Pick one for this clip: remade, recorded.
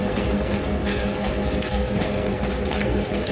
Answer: remade